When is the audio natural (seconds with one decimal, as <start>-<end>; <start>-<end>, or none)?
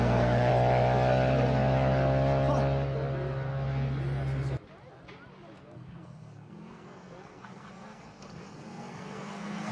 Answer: 0.5-5.6